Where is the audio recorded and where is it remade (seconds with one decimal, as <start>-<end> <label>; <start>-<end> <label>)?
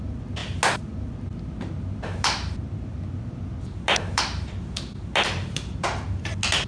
0.0-6.7 recorded